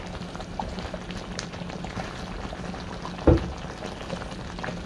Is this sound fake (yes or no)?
no